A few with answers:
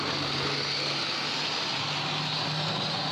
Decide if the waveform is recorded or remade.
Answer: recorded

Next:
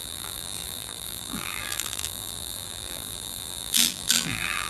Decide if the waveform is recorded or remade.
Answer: remade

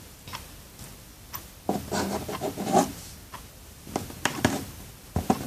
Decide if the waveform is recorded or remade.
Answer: remade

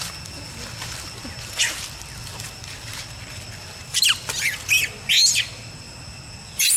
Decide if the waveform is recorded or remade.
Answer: recorded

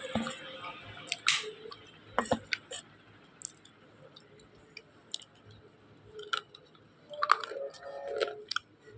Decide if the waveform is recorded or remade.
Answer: recorded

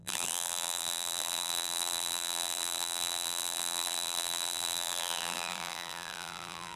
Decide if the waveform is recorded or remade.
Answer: remade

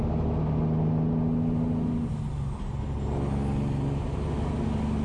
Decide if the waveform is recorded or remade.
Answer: recorded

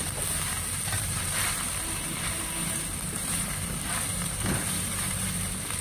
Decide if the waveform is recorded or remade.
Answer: remade